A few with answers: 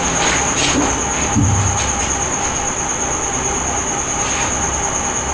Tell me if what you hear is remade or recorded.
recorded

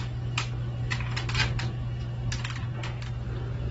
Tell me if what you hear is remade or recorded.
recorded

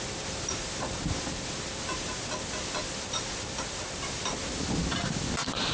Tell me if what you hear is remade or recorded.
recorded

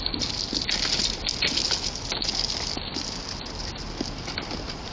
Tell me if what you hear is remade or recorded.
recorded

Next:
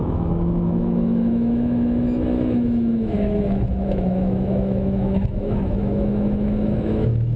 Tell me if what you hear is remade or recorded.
remade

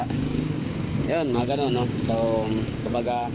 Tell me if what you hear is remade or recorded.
remade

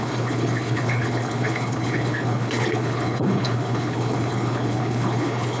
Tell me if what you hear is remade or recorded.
remade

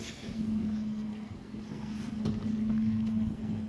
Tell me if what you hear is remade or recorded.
remade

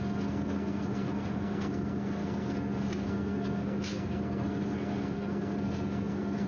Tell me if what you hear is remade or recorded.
remade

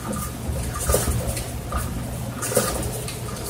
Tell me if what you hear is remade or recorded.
remade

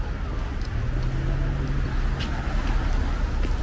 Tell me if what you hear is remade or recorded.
recorded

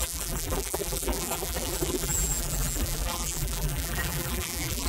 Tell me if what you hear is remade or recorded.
remade